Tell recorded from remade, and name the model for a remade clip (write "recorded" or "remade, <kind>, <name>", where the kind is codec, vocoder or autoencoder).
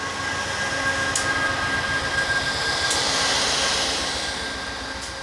recorded